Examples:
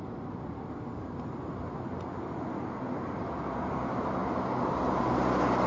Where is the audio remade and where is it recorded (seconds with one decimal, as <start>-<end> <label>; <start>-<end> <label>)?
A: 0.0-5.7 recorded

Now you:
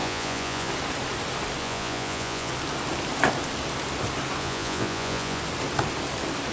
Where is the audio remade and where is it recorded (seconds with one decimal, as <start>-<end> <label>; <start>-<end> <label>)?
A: 0.0-0.7 remade; 0.7-1.6 recorded; 1.6-2.5 remade; 2.5-4.4 recorded; 4.4-5.4 remade; 5.4-6.5 recorded

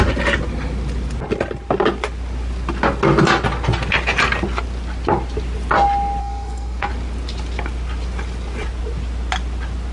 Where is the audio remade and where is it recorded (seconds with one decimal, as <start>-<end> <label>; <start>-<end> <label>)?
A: 0.0-6.2 recorded; 6.2-6.9 remade; 6.9-9.9 recorded

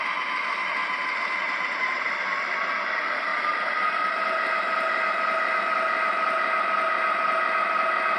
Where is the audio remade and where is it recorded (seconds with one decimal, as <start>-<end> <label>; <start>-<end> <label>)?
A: 0.0-0.8 recorded; 0.8-2.5 remade; 2.5-8.2 recorded

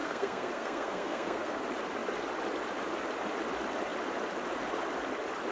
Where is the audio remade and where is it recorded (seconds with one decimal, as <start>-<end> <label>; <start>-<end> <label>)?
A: 0.0-1.6 remade; 1.6-5.5 recorded